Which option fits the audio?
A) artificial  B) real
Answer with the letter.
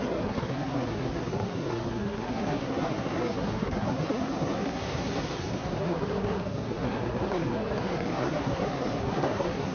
A